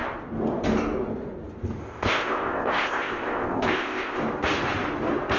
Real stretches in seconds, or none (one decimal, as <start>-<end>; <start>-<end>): 0.0-1.8; 4.2-5.4